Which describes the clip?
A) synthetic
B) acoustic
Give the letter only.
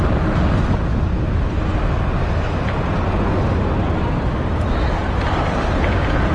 B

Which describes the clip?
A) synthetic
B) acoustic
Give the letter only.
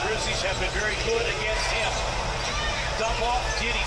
B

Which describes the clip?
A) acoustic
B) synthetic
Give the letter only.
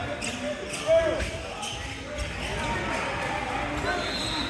A